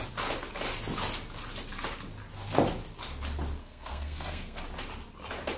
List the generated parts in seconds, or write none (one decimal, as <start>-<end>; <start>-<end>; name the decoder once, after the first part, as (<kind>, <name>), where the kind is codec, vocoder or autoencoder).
3.6-4.6 (codec, SNAC)